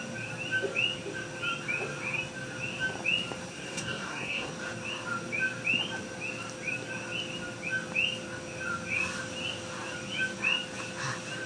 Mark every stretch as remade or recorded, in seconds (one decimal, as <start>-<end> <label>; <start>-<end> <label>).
0.0-3.5 recorded; 3.5-4.5 remade; 4.5-11.5 recorded